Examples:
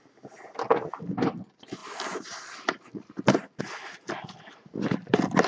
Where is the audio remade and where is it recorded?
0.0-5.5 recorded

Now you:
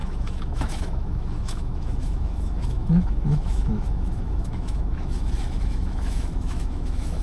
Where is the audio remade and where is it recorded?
0.0-7.2 remade

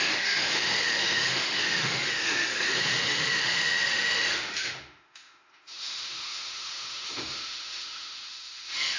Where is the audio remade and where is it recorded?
0.0-9.0 remade

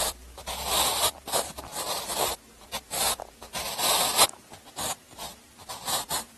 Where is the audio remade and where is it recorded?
0.0-6.4 recorded

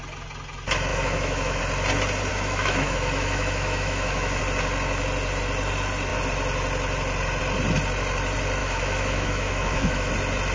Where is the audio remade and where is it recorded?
0.0-0.9 recorded; 0.9-1.6 remade; 1.6-2.3 recorded; 2.3-4.4 remade; 4.4-8.6 recorded; 8.6-10.1 remade; 10.1-10.5 recorded

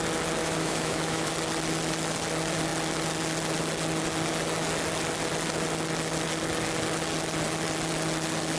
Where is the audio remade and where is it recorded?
0.0-0.4 recorded; 0.4-1.3 remade; 1.3-8.6 recorded